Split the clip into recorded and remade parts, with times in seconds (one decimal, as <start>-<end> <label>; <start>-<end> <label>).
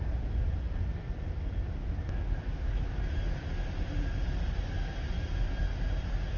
0.0-1.8 recorded; 1.8-3.0 remade; 3.0-6.4 recorded